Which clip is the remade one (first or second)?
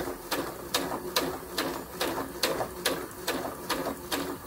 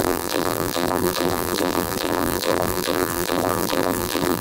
second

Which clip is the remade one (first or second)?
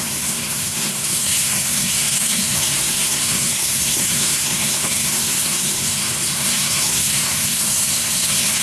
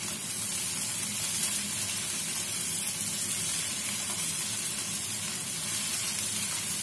first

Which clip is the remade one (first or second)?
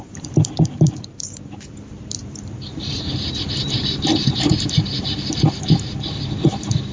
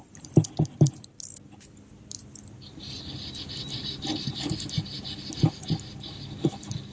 first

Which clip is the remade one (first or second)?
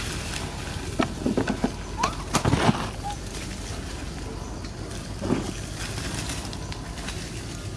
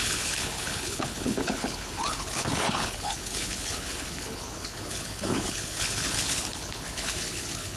second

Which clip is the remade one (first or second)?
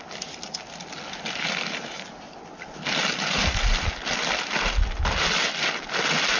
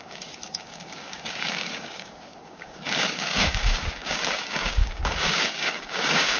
second